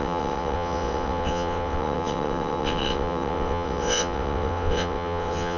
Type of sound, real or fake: fake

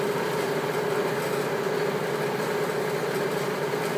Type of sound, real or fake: real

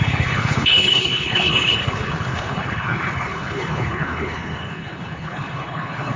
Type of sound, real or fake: fake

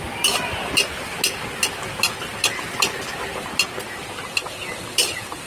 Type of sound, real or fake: real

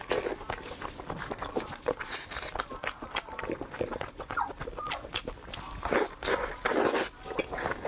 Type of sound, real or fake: real